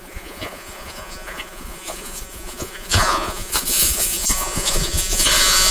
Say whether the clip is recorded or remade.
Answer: remade